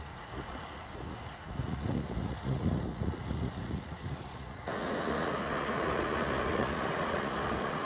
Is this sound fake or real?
fake